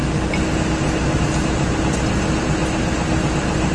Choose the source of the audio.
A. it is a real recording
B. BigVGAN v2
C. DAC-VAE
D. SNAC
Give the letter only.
A